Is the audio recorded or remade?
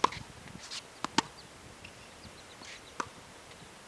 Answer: recorded